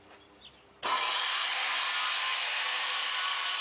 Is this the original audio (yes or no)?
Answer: yes